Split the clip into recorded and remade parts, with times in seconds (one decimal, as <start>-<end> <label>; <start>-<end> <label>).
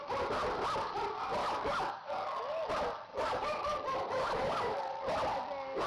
0.0-1.4 recorded; 1.4-2.7 remade; 2.7-3.1 recorded; 3.1-5.0 remade; 5.0-5.9 recorded